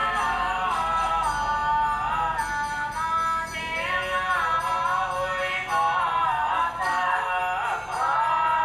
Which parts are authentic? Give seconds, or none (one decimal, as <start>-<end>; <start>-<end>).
1.1-6.3; 7.4-8.6

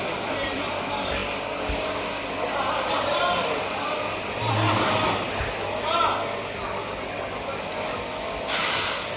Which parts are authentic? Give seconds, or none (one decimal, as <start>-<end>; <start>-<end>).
0.0-9.2

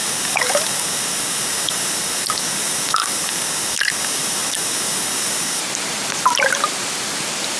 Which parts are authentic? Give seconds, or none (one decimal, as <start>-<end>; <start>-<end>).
5.6-7.6

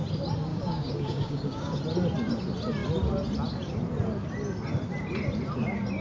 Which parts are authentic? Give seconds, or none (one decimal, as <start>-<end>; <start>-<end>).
0.0-0.5; 1.8-6.0